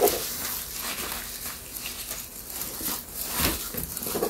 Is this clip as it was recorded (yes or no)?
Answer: yes